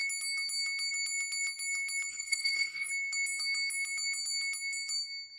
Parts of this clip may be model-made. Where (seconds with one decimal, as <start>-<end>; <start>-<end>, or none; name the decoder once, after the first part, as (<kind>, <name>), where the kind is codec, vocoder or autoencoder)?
2.1-2.9 (codec, SNAC)